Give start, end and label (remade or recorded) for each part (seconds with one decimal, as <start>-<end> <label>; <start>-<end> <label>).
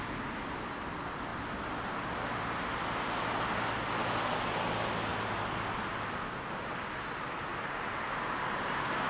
0.0-7.5 recorded; 7.5-9.1 remade